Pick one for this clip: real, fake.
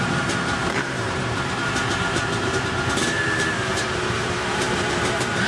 fake